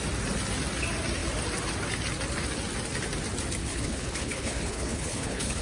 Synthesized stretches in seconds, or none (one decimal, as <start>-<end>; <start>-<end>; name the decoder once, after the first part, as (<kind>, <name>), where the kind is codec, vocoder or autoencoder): 3.6-5.6 (codec, HILCodec)